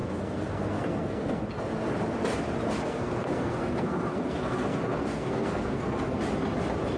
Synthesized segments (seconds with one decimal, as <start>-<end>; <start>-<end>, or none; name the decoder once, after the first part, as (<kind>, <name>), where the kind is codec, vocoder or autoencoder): 0.0-1.4 (codec, SNAC); 2.8-6.2